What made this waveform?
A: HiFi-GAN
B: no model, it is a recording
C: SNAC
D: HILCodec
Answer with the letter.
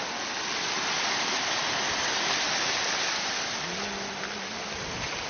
B